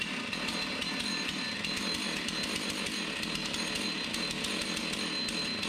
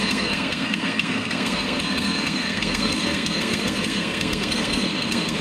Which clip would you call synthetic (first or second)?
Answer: second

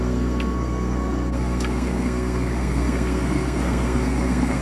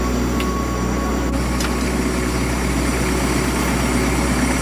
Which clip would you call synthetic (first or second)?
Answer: first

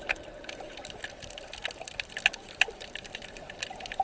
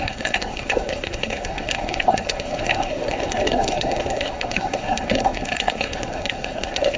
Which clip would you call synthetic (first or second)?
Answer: second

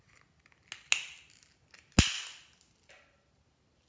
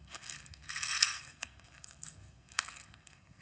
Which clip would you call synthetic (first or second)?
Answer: second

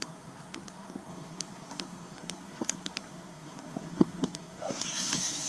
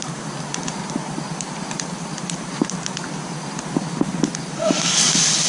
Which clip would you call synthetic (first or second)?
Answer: first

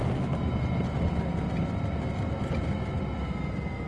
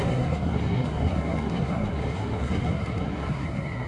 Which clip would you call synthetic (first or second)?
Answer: second